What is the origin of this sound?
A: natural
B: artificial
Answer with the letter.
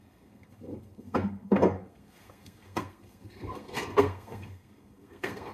B